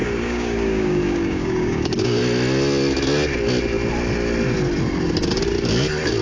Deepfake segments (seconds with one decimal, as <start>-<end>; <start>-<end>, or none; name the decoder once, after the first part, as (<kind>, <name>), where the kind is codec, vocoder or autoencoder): 0.0-2.2 (codec, DAC)